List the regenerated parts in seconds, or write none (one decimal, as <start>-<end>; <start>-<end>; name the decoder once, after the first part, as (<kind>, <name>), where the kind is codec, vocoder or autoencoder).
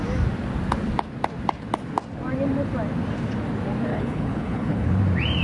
3.9-5.0 (codec, HILCodec)